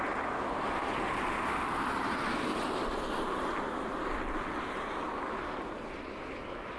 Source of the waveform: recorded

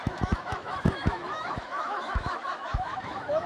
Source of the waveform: remade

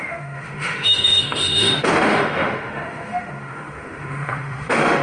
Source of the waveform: remade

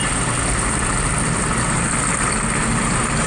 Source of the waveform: recorded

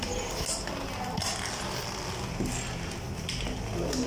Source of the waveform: recorded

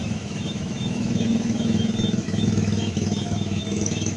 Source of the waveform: remade